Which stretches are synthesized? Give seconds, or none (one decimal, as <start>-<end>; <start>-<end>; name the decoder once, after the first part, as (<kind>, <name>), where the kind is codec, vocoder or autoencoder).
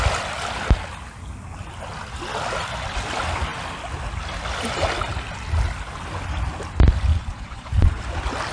7.1-8.0 (vocoder, Vocos)